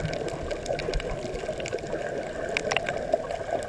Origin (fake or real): real